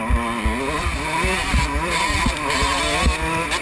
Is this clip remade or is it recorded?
recorded